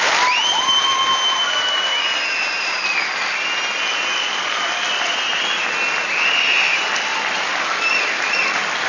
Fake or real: real